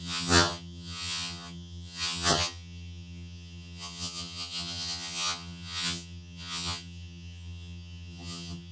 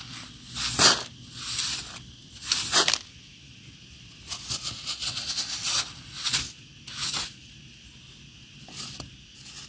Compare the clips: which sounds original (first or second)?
second